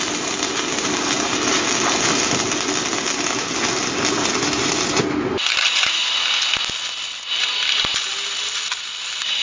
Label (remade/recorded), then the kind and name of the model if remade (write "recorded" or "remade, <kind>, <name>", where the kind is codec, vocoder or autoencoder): recorded